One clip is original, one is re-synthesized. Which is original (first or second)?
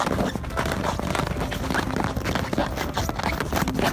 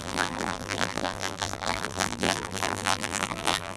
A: first